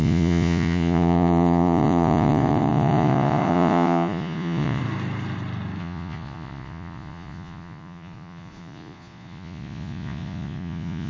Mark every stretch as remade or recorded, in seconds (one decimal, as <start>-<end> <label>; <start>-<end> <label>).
0.0-4.8 remade; 4.8-5.8 recorded; 5.8-11.1 remade